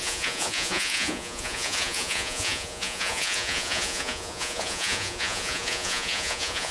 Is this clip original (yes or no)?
no